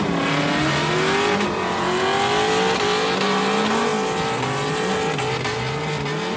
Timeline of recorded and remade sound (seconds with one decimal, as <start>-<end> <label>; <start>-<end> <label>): 0.0-6.4 recorded